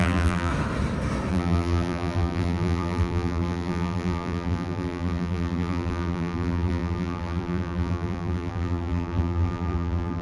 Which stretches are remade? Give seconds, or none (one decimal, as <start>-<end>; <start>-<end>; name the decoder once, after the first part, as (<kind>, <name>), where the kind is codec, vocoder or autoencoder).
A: 0.0-0.5 (vocoder, BigVGAN v2); 1.3-10.2

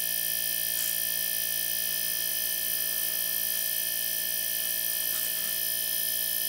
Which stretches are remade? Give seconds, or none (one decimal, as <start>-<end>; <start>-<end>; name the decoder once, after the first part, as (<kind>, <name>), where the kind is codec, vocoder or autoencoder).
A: 2.3-6.5 (vocoder, BigVGAN v2)

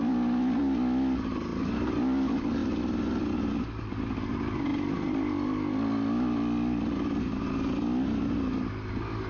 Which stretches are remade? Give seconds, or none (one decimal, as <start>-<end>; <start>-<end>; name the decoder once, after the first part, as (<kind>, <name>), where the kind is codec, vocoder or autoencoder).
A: 1.5-2.0 (vocoder, BigVGAN v2)

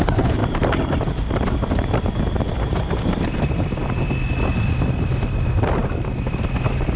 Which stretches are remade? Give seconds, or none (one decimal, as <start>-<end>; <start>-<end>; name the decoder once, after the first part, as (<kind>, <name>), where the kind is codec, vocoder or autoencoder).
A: 0.4-1.9 (vocoder, BigVGAN v2)

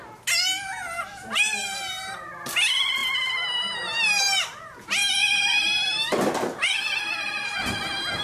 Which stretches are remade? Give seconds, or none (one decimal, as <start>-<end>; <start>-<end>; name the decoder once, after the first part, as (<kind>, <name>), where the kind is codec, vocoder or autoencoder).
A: 5.2-6.9 (vocoder, BigVGAN v2)

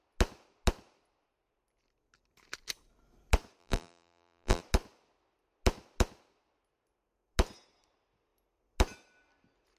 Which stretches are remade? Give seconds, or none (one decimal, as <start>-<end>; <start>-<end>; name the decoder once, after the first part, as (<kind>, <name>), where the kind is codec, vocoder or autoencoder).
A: 3.6-4.6 (vocoder, BigVGAN v2)

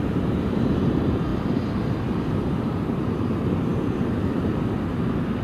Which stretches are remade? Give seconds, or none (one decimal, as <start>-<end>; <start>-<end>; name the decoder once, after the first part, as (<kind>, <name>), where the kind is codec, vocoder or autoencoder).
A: 0.0-1.3 (vocoder, BigVGAN v2); 2.4-5.4

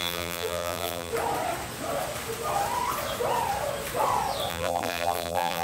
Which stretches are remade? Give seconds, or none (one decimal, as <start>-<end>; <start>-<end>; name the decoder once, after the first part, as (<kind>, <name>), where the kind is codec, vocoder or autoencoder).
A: 0.0-1.1 (vocoder, BigVGAN v2); 4.5-5.6